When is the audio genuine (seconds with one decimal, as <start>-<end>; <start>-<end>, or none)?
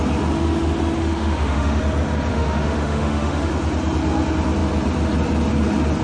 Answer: 0.0-1.0; 1.8-2.3; 3.5-6.0